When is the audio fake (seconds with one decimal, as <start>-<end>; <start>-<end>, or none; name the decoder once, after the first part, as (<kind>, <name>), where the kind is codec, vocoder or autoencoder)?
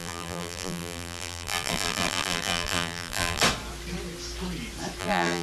0.0-3.4 (vocoder, BigVGAN v2); 5.0-5.4